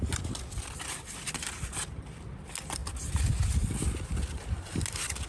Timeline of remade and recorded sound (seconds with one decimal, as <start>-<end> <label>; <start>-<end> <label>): 0.0-5.3 recorded